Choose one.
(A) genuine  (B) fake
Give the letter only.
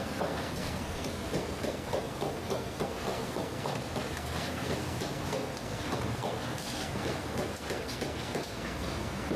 B